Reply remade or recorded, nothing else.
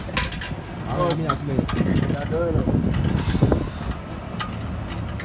recorded